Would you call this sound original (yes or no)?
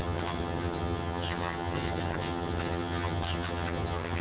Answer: no